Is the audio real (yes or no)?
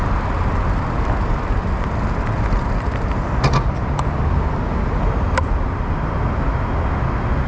yes